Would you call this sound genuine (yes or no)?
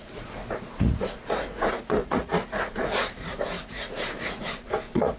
no